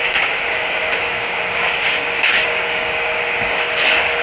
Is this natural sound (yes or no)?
no